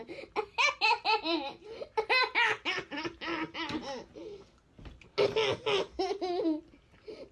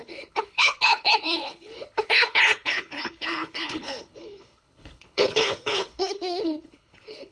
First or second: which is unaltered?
first